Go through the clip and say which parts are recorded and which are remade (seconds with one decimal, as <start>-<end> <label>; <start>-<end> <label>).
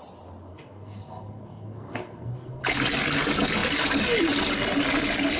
0.0-0.5 recorded; 0.5-2.6 remade; 2.6-5.4 recorded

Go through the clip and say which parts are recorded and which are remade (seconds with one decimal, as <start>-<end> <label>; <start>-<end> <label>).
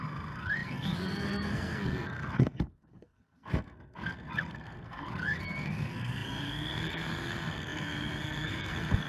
0.0-9.1 remade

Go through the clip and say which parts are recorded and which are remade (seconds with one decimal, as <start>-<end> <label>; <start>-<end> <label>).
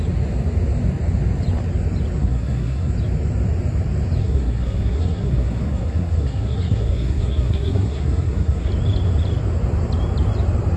0.0-2.2 recorded; 2.2-2.9 remade; 2.9-4.2 recorded; 4.2-8.7 remade; 8.7-10.8 recorded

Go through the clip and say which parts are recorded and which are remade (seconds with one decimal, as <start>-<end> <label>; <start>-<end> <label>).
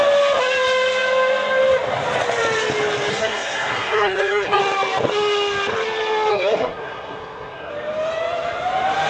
0.0-3.1 recorded; 3.1-4.6 remade; 4.6-6.3 recorded; 6.3-7.7 remade; 7.7-9.1 recorded